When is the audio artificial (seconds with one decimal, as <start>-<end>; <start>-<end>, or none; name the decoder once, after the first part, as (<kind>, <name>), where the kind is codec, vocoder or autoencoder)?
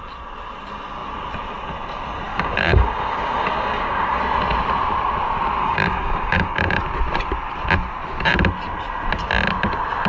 2.3-4.2 (codec, DAC); 5.6-6.8